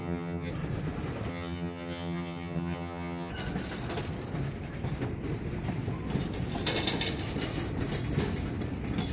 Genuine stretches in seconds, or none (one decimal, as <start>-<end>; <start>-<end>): 0.5-1.3; 3.3-9.1